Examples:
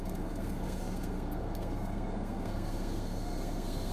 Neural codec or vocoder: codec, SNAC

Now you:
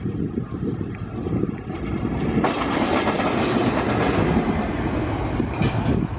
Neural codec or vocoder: none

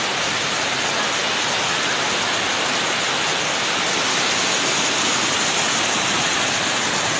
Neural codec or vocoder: none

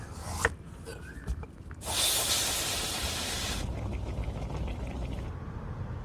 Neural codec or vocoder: none